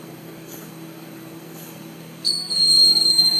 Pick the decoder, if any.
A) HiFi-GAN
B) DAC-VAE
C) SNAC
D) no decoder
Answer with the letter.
C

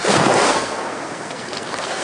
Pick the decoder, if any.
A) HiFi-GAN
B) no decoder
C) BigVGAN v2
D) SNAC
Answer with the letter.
D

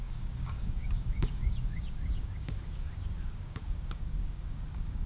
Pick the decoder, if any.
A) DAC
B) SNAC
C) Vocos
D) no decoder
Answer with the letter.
A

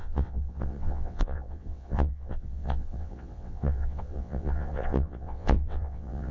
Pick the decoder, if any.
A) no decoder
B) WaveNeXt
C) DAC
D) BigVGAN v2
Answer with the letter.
B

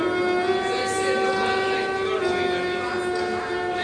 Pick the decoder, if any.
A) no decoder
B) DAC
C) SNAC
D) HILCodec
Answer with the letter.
A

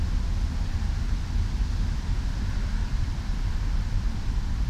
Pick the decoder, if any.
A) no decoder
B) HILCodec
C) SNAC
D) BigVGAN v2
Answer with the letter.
A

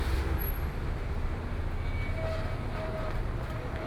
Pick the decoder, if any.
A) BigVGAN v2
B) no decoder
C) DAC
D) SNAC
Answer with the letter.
B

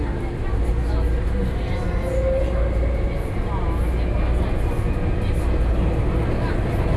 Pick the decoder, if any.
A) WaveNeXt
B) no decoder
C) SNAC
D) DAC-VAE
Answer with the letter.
B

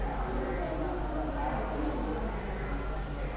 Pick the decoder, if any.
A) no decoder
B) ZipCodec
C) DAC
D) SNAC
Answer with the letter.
A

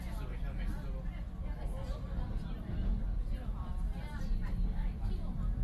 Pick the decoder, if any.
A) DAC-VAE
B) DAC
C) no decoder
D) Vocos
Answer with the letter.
C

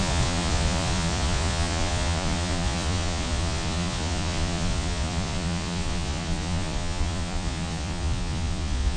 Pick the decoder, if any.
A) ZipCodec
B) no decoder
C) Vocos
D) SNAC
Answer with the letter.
C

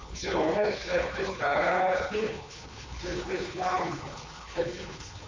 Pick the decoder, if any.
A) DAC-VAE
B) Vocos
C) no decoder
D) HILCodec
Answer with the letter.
D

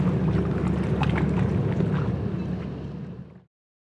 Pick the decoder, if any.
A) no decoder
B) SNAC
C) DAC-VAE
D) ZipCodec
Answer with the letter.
A